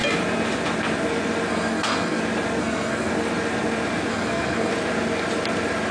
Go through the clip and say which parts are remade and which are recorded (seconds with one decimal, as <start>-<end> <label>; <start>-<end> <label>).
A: 0.0-1.5 recorded; 1.5-2.2 remade; 2.2-2.6 recorded; 2.6-3.1 remade; 3.1-4.1 recorded; 4.1-4.7 remade; 4.7-5.9 recorded